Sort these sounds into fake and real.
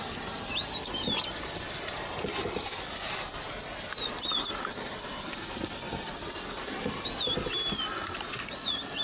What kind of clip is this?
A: real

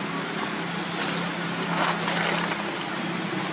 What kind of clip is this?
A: real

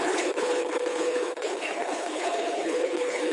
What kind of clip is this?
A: fake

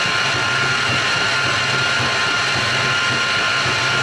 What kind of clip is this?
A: real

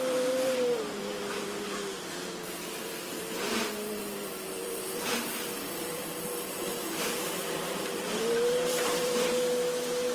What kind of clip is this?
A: fake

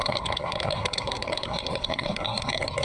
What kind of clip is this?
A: fake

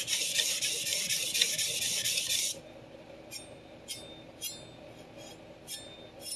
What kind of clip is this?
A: real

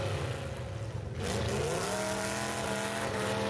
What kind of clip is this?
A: real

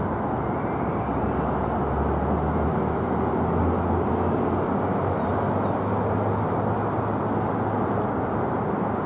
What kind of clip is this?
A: real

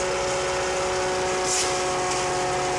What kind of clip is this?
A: real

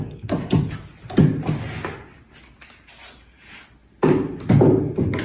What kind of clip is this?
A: real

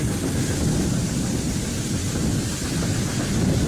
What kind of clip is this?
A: real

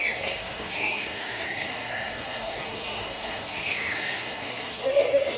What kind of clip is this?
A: fake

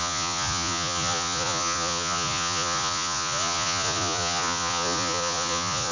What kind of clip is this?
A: fake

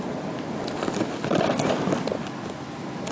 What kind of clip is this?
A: real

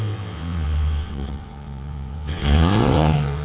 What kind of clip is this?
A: fake